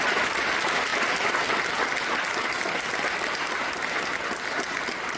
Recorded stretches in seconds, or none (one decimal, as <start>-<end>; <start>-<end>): 0.0-5.2